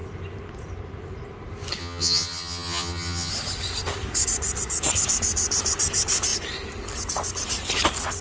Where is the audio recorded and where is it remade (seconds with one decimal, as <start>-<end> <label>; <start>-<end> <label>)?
0.0-1.8 recorded; 1.8-3.3 remade; 3.3-8.2 recorded